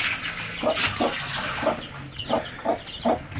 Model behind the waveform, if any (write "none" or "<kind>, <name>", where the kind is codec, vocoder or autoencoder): none